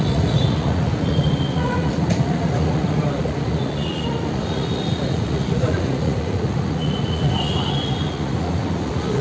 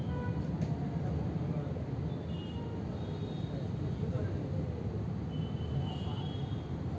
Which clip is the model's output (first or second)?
first